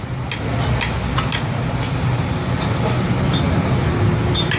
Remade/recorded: recorded